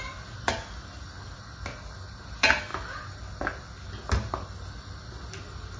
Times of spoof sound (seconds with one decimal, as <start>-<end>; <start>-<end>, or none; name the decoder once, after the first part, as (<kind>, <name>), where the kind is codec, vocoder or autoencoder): none